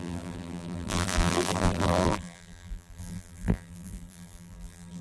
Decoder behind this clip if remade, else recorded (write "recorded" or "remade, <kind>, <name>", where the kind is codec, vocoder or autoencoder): remade, vocoder, BigVGAN v2